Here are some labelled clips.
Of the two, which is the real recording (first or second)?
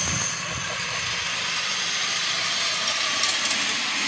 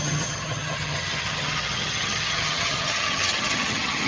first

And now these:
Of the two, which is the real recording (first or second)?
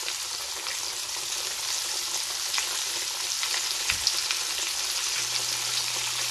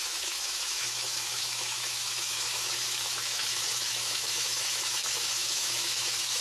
first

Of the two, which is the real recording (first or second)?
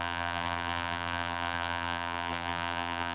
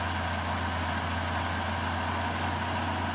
second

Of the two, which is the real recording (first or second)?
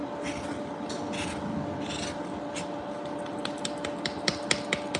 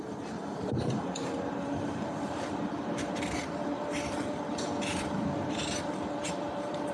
first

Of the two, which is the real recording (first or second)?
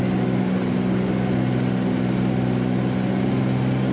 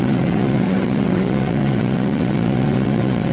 first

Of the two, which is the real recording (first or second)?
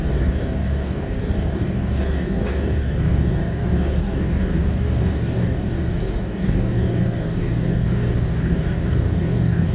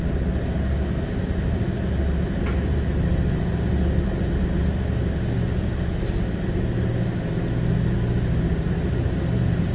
second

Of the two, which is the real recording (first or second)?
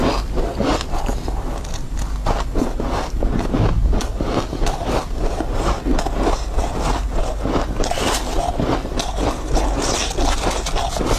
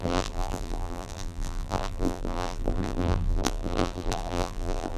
first